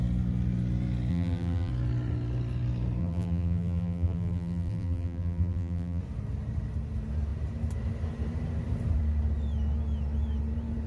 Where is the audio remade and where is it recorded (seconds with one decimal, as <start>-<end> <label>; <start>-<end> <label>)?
0.0-1.1 recorded; 1.1-1.7 remade; 1.7-3.0 recorded; 3.0-6.0 remade; 6.0-10.9 recorded